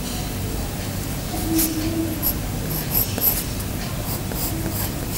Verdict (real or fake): real